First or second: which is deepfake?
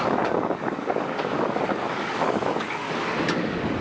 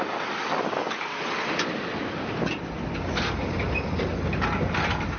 first